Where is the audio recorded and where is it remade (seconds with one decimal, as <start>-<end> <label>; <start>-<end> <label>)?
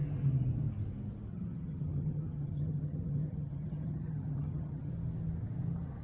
0.0-1.3 recorded; 1.3-4.9 remade; 4.9-6.0 recorded